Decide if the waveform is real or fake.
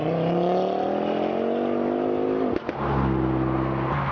real